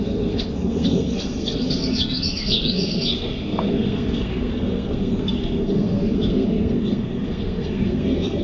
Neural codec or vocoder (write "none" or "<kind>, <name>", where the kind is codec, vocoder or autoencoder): codec, SNAC